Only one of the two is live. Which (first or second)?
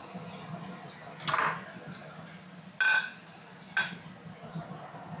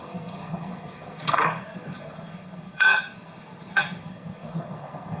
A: first